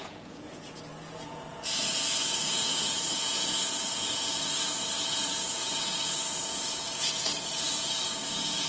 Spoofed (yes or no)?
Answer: yes